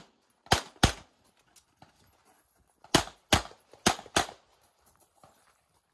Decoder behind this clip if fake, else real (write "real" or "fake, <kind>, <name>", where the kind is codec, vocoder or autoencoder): real